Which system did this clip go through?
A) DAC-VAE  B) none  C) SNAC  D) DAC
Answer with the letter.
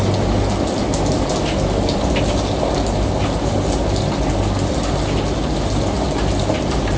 B